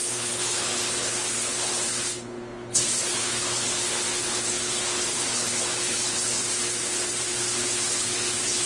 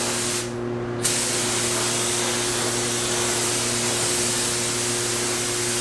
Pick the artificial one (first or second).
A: first